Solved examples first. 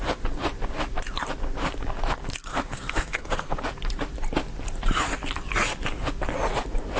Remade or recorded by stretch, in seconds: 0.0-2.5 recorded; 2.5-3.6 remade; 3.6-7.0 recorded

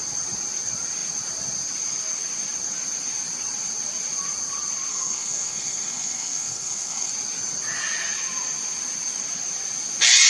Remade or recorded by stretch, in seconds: 0.0-4.9 recorded; 4.9-7.1 remade; 7.1-10.3 recorded

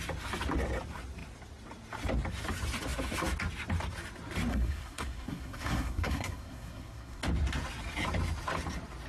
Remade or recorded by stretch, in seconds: 0.0-4.5 recorded; 4.5-7.2 remade; 7.2-9.1 recorded

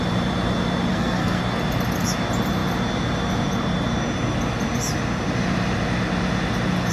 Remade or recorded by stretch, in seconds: 0.0-0.9 recorded; 0.9-1.4 remade; 1.4-6.9 recorded

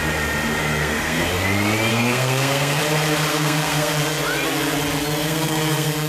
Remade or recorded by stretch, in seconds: 0.0-0.6 recorded; 0.6-1.3 remade; 1.3-1.9 recorded; 1.9-2.8 remade; 2.8-3.3 recorded; 3.3-3.9 remade; 3.9-5.2 recorded; 5.2-6.1 remade

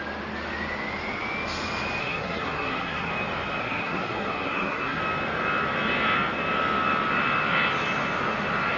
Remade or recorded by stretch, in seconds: 0.0-2.0 recorded; 2.0-3.1 remade; 3.1-3.6 recorded; 3.6-5.0 remade; 5.0-8.8 recorded

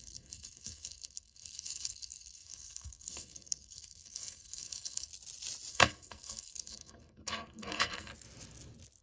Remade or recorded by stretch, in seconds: 0.0-5.1 remade; 5.1-5.7 recorded; 5.7-8.1 remade; 8.1-9.0 recorded